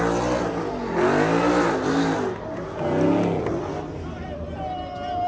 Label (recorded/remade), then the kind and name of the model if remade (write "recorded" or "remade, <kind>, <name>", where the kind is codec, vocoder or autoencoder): recorded